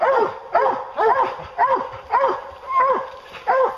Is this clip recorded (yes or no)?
yes